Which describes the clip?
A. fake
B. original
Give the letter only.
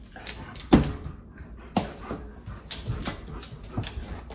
B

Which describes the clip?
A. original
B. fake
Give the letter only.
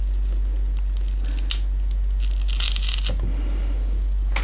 A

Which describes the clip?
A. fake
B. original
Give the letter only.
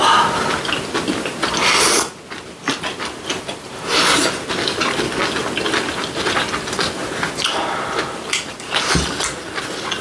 B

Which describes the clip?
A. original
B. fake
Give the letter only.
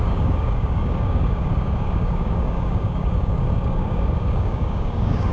B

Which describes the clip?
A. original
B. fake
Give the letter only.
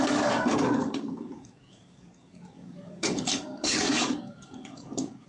B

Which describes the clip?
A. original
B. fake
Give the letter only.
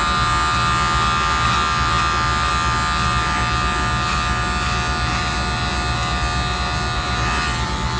A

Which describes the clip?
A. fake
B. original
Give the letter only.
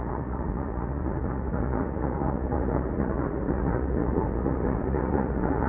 A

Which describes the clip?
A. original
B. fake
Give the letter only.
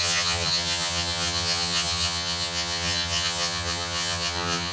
B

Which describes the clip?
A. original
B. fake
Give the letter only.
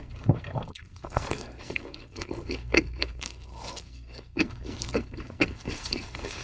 B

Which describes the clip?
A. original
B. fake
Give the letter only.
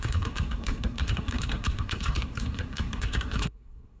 B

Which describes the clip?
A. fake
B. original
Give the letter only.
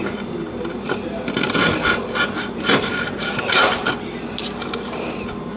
B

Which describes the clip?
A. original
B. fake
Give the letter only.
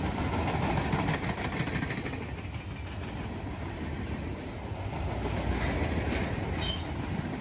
A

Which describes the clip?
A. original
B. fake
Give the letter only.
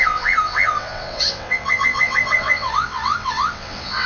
B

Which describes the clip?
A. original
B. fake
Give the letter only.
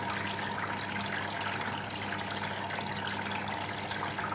A